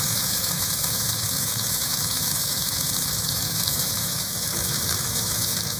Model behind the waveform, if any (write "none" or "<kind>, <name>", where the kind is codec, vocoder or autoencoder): autoencoder, DAC-VAE